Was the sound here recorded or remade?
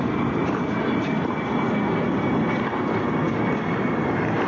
recorded